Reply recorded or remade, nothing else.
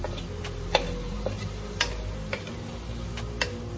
recorded